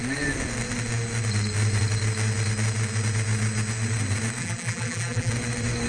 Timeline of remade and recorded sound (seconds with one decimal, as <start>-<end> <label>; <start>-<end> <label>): 0.0-4.4 recorded; 4.4-5.3 remade; 5.3-5.9 recorded